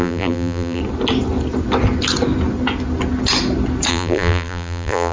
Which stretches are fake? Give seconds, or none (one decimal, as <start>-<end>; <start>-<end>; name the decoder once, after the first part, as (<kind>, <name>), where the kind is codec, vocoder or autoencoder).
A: 0.0-0.8 (vocoder, BigVGAN v2); 3.9-5.1